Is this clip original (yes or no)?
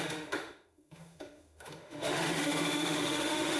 no